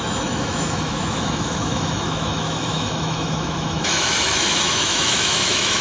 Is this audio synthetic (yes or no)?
yes